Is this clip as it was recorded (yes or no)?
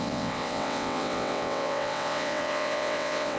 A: no